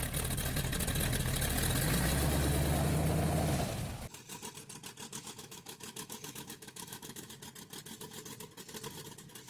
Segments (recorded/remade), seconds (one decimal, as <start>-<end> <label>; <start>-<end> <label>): 0.0-5.1 recorded; 5.1-7.3 remade; 7.3-9.5 recorded